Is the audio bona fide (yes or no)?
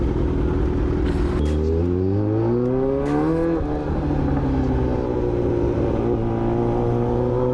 yes